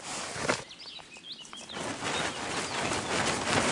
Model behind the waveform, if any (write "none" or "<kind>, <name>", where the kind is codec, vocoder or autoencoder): none